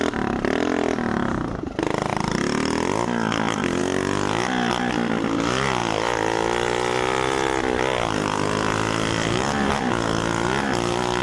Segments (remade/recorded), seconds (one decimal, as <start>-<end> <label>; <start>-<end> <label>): 0.0-11.2 recorded